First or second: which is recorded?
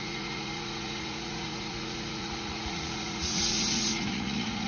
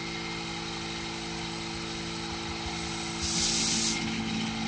second